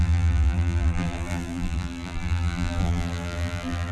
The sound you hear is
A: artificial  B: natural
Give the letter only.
A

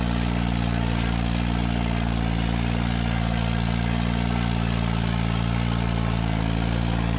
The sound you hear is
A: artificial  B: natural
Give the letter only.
B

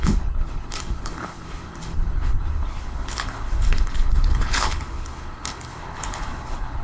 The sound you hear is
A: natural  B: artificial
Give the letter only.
B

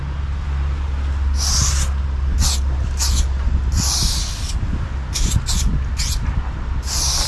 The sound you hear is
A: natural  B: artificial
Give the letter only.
A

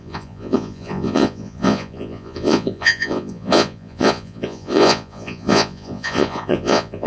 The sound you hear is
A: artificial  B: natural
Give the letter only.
A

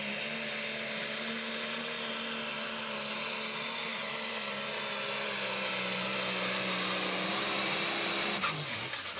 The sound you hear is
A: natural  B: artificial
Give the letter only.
A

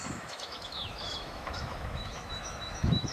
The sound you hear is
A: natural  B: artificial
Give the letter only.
B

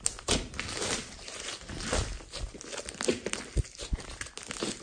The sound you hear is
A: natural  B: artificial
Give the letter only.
A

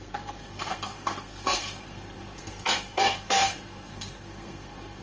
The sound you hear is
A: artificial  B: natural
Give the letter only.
A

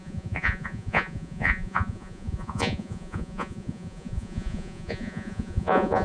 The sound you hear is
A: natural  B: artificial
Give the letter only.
B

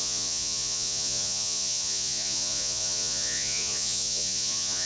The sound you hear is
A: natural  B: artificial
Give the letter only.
B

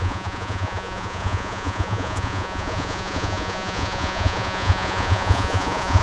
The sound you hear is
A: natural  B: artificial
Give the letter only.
B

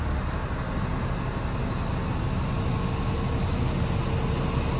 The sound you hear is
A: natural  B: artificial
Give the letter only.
A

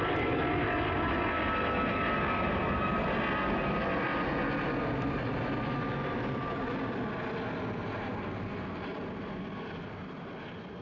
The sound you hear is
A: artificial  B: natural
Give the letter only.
B